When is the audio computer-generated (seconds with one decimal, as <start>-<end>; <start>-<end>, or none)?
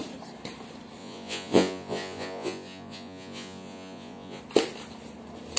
1.0-4.4